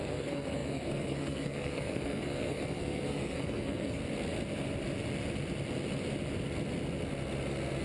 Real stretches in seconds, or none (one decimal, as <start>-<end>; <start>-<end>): 4.0-7.8